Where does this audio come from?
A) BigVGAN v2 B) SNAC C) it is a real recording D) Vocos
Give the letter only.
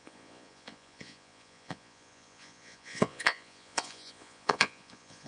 D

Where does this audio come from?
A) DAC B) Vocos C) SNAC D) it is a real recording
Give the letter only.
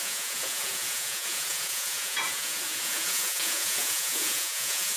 B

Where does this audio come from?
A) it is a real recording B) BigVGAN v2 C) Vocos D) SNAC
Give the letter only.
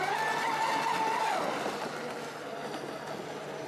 A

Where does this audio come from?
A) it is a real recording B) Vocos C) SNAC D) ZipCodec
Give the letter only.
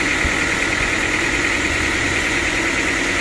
B